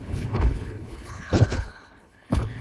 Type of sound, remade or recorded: remade